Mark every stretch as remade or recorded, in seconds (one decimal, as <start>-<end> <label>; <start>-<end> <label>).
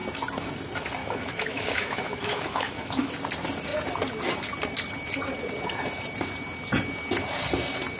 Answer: 0.0-1.0 recorded; 1.0-3.1 remade; 3.1-8.0 recorded